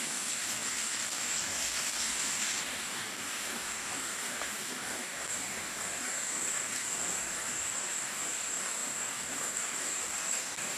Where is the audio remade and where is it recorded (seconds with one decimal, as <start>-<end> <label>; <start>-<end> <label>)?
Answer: 0.0-10.8 remade